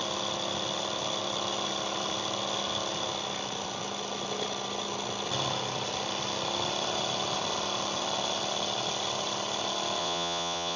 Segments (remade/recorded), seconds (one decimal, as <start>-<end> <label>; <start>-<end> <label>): 0.0-10.0 recorded; 10.0-10.8 remade